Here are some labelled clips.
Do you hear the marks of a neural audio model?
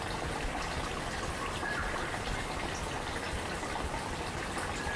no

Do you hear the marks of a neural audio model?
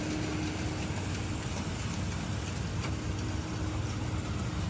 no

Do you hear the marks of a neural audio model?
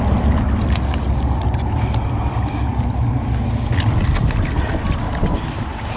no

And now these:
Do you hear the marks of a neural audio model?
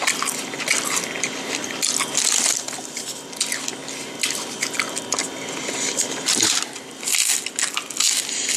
no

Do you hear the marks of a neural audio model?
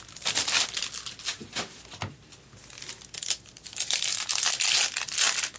no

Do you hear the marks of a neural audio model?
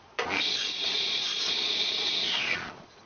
yes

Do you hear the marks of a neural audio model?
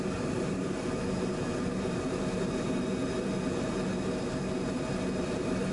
yes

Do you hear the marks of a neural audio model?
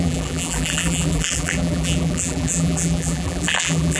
yes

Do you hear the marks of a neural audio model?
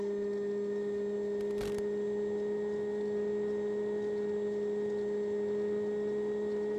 no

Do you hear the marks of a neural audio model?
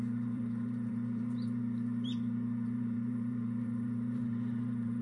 yes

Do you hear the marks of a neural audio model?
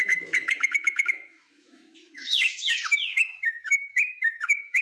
yes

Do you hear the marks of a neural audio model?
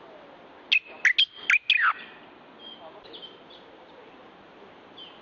no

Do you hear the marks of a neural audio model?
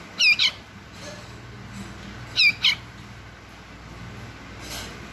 no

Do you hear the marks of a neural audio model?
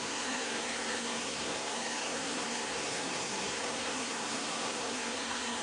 yes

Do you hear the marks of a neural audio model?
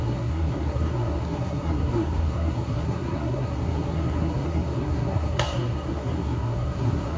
yes